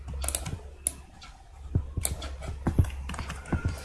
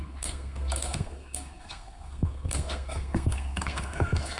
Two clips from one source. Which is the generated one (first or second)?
second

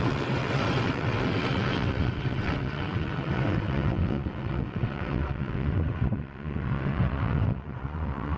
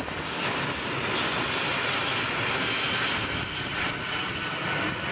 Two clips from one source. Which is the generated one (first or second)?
first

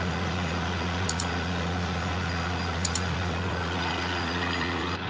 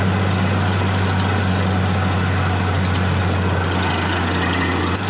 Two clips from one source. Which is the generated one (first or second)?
first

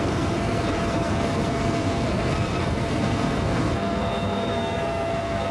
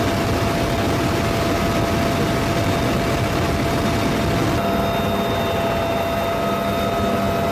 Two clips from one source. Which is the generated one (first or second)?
first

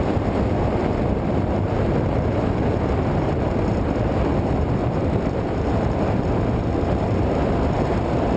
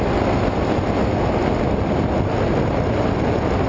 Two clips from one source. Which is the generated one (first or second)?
first